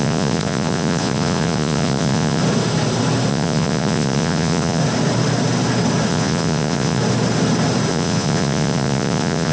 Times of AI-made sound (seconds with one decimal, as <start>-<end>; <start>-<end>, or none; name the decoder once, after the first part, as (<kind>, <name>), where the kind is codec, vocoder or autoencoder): 0.0-2.4 (vocoder, Vocos); 3.3-4.8; 6.1-7.0; 7.9-9.5